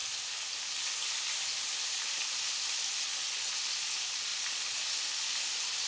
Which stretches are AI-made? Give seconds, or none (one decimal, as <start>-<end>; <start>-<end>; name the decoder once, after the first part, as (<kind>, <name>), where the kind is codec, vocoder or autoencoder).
none